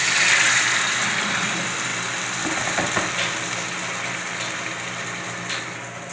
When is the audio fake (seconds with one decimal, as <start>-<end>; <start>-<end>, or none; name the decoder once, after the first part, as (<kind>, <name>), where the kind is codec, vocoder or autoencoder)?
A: 1.9-5.6 (vocoder, BigVGAN v2)